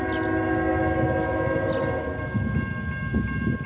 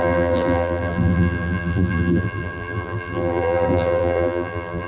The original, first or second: first